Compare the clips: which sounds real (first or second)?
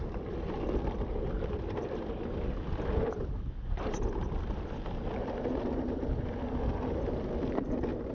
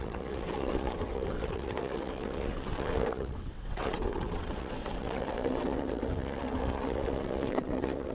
first